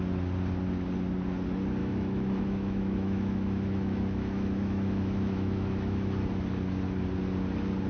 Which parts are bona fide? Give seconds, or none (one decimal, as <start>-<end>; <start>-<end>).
0.0-1.8; 6.3-7.9